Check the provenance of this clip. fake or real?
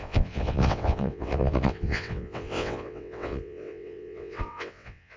fake